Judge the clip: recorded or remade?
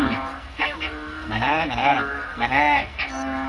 remade